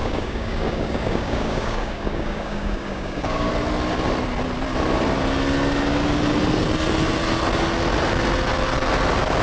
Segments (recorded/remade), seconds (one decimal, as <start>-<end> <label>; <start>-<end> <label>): 0.0-3.5 remade; 3.5-9.4 recorded